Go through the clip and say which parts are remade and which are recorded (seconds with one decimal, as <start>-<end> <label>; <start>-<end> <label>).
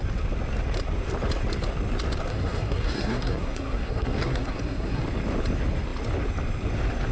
0.0-2.3 recorded; 2.3-5.0 remade; 5.0-7.1 recorded